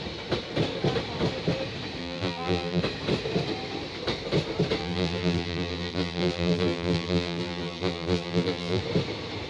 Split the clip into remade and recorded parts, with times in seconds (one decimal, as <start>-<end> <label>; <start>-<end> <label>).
0.0-2.0 recorded; 2.0-2.8 remade; 2.8-4.8 recorded; 4.8-8.8 remade; 8.8-9.5 recorded